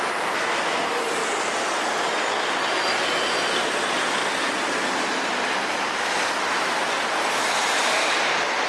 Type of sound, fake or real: real